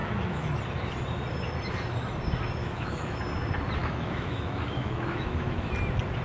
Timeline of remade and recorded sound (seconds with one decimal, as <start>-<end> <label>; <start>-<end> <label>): 0.0-0.5 remade; 0.5-2.6 recorded; 2.6-3.2 remade; 3.2-3.8 recorded; 3.8-5.7 remade; 5.7-6.2 recorded